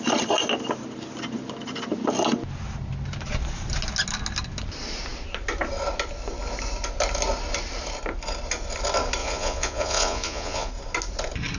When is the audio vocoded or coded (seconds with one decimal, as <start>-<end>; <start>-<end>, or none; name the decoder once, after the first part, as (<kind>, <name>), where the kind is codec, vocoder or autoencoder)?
9.2-10.7 (vocoder, Vocos)